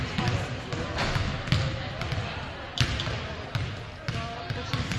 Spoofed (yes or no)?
no